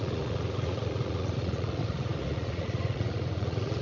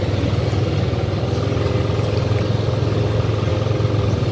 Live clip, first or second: second